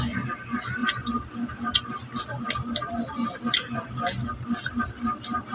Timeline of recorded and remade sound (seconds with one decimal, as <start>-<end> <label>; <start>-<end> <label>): 0.0-5.5 recorded